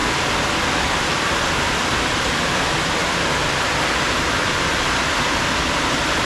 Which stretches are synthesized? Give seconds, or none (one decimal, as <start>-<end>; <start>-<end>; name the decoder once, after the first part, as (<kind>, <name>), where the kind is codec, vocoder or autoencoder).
none